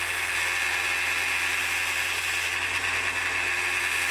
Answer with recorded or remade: recorded